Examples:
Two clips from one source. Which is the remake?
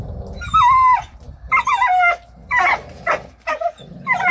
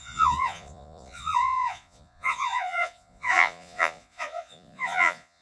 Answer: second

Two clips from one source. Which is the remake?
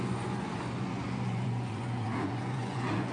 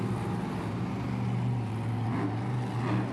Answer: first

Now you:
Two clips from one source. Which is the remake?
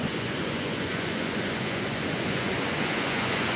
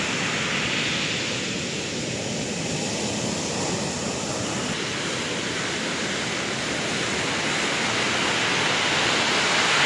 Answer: first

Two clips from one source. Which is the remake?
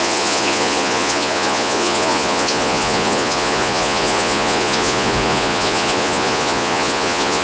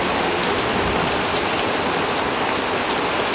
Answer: first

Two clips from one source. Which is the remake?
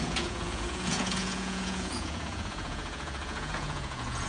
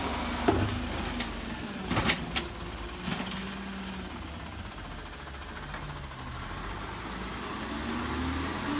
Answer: first